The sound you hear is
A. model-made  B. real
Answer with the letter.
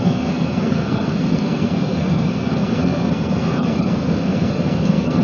A